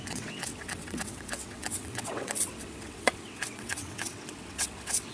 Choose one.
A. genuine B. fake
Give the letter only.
B